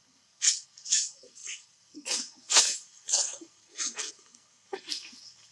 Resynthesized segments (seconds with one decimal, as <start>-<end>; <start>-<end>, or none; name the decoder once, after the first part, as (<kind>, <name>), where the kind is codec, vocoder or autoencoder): 0.0-5.5 (codec, SNAC)